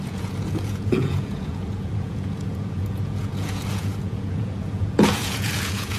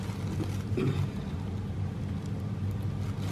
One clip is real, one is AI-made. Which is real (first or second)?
second